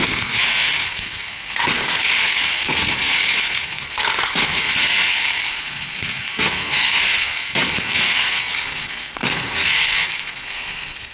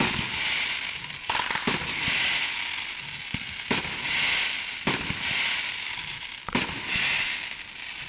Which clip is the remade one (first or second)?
first